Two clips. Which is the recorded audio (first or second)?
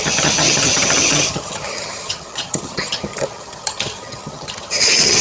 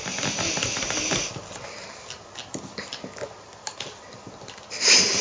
second